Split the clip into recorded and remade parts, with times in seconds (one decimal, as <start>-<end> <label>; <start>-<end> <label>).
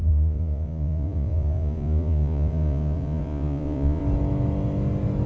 0.0-4.0 remade; 4.0-5.3 recorded